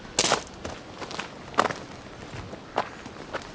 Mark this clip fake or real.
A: real